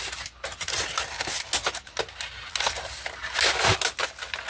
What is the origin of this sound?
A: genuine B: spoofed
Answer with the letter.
A